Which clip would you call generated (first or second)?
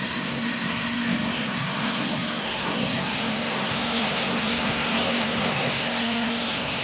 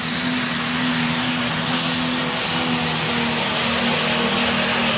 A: first